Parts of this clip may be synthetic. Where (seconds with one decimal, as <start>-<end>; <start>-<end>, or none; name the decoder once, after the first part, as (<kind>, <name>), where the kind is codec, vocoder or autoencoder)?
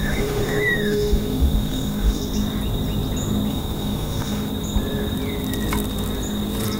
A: 0.0-2.2 (autoencoder, DAC-VAE); 3.5-4.5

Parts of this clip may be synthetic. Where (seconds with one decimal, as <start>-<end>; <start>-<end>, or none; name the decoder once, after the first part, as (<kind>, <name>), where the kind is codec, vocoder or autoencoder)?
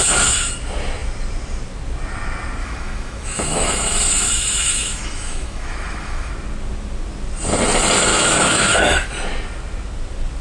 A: 2.6-6.3 (autoencoder, DAC-VAE); 8.1-9.1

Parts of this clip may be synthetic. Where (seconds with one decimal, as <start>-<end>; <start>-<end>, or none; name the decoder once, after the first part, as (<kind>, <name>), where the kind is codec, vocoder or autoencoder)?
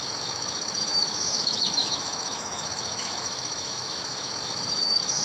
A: 0.0-5.2 (autoencoder, DAC-VAE)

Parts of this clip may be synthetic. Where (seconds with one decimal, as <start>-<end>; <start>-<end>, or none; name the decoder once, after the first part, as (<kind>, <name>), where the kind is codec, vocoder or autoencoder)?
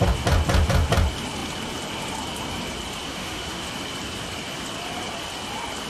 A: 3.1-3.6 (autoencoder, DAC-VAE)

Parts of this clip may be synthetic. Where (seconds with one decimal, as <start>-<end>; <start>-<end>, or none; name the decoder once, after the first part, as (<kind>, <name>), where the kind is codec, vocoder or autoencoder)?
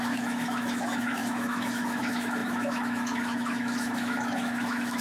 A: 0.0-5.0 (autoencoder, DAC-VAE)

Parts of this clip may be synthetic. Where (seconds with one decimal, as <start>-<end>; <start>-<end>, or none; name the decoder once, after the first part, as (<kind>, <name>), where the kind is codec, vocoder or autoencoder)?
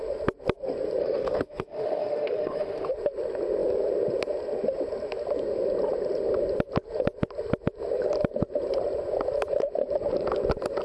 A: 1.0-2.9 (autoencoder, DAC-VAE)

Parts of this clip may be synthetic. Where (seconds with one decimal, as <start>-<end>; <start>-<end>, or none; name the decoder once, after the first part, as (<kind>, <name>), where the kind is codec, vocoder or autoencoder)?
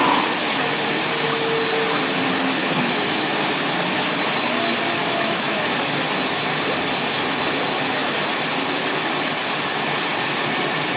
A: 2.6-3.3 (autoencoder, DAC-VAE); 5.0-5.6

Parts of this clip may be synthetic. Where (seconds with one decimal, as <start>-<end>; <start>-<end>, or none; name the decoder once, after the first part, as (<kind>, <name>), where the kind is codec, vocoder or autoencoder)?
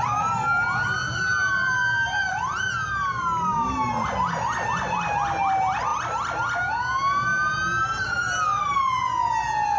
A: none